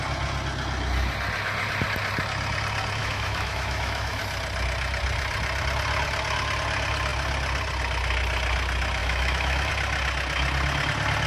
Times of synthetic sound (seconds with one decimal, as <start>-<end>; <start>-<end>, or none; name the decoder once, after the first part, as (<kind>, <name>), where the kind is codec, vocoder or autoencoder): 3.0-4.2 (autoencoder, DAC-VAE); 9.0-9.7